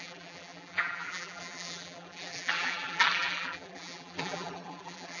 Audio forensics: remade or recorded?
remade